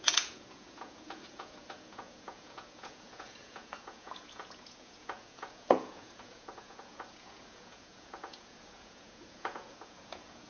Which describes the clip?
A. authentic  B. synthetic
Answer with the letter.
B